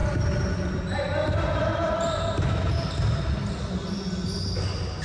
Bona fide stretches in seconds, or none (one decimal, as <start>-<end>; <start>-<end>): 0.0-5.0